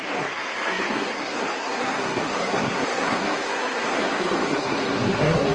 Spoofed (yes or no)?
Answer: yes